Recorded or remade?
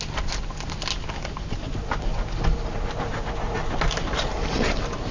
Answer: recorded